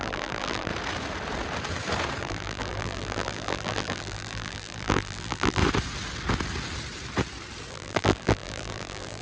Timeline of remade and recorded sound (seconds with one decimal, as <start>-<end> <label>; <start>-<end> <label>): 0.0-0.7 remade; 0.7-2.2 recorded; 2.2-5.6 remade; 5.6-7.7 recorded; 7.7-9.2 remade